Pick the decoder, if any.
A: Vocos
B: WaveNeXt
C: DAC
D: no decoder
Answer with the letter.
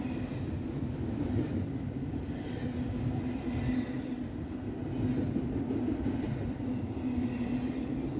D